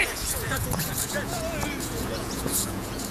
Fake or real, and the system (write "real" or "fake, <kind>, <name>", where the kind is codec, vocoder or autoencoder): fake, vocoder, Vocos